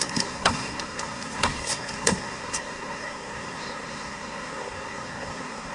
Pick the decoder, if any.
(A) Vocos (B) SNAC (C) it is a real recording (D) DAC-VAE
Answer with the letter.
B